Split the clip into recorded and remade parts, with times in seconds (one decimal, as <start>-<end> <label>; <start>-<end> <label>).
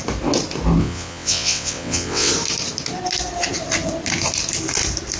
0.0-0.8 recorded; 0.8-2.3 remade; 2.3-5.2 recorded